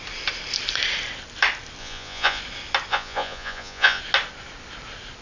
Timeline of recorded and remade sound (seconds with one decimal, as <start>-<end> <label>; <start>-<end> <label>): 0.0-1.8 recorded; 1.8-2.4 remade; 2.4-2.9 recorded; 2.9-4.0 remade; 4.0-5.2 recorded